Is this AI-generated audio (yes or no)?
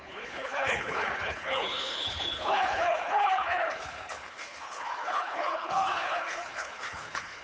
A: yes